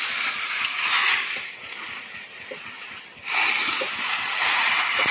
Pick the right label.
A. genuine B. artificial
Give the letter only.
A